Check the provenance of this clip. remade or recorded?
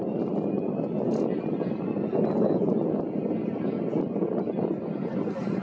recorded